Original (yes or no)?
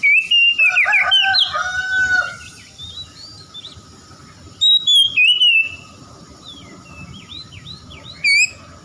yes